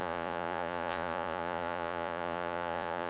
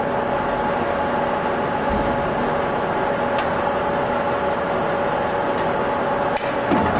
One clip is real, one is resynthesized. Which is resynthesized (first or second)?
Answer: first